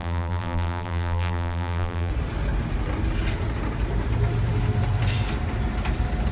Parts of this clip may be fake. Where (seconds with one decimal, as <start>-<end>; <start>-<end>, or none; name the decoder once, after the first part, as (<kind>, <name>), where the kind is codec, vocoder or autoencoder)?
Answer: 0.0-2.1 (vocoder, BigVGAN v2)